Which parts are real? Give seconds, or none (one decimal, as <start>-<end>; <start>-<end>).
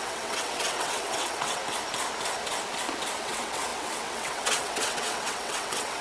1.6-3.2